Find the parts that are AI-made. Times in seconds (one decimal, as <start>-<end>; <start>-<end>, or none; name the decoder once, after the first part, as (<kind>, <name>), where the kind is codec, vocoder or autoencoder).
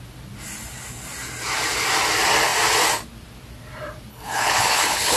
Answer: 4.1-5.2 (codec, HILCodec)